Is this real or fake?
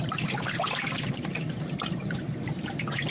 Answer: real